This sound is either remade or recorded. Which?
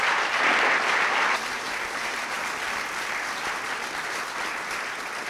recorded